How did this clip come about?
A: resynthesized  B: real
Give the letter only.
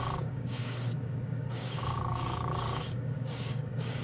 A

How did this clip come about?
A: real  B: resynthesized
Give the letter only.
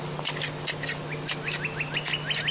A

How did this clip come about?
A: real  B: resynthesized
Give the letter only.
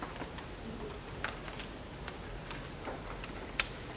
A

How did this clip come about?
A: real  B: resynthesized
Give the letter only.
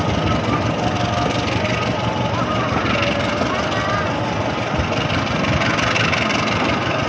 A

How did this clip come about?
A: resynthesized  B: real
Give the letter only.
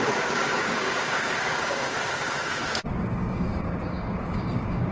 A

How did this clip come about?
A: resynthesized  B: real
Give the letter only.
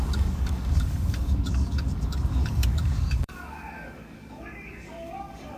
A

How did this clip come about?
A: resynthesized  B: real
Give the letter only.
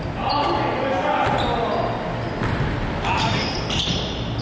B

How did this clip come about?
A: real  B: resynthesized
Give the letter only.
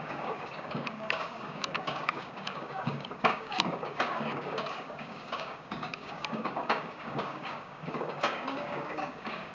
B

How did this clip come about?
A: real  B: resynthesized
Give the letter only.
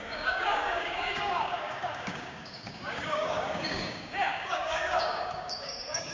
B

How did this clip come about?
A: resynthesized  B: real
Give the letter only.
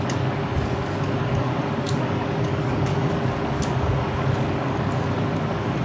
A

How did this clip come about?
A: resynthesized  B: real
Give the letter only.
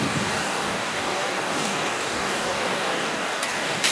A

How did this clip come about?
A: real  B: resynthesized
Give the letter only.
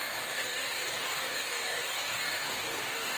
B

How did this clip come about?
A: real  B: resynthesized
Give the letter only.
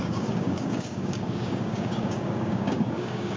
B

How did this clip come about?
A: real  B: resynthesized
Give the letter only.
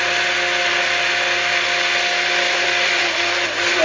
A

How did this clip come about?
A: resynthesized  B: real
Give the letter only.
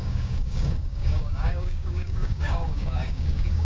A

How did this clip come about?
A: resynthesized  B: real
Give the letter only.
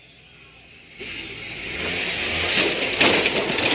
B